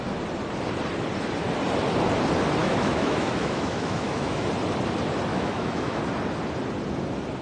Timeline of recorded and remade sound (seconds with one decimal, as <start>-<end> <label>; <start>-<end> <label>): 0.0-2.6 recorded; 2.6-4.5 remade; 4.5-5.3 recorded; 5.3-6.0 remade; 6.0-7.4 recorded